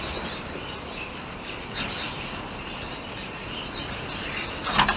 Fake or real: real